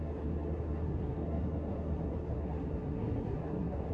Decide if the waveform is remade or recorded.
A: remade